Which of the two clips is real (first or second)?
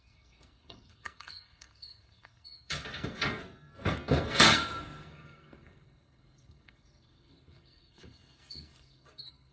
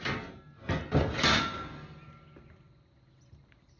second